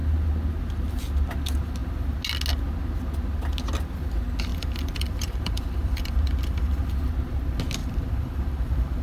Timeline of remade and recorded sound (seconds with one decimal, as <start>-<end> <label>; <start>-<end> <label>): 0.0-4.5 recorded; 4.5-6.9 remade; 6.9-7.8 recorded; 7.8-9.0 remade